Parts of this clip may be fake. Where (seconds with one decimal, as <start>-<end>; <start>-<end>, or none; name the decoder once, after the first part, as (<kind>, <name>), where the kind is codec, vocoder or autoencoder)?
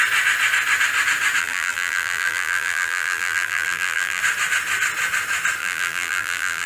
1.4-4.2 (vocoder, BigVGAN v2); 5.6-6.7